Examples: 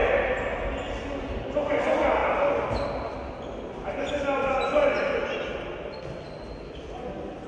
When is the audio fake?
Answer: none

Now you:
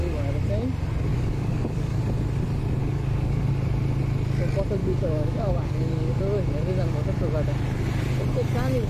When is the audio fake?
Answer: 1.1-2.0 (codec, DAC); 2.8-3.5; 4.8-6.2

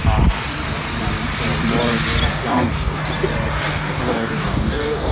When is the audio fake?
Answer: 2.3-3.0 (codec, DAC); 3.7-5.1

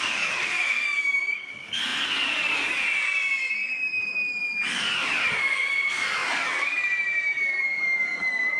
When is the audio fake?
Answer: 0.0-8.6 (codec, DAC)

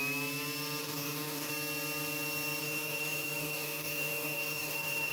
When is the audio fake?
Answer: 0.8-1.5 (codec, DAC); 2.6-5.1